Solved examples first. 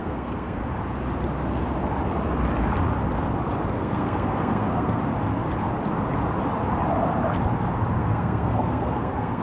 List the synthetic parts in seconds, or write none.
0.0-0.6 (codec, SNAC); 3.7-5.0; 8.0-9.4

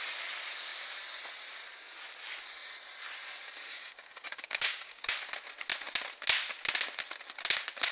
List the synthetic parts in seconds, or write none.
3.7-5.1 (codec, DAC)